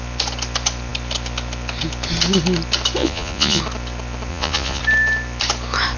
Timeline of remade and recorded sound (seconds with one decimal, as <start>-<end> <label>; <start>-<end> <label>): 0.0-3.0 recorded; 3.0-3.6 remade; 3.6-4.3 recorded; 4.3-4.8 remade; 4.8-6.0 recorded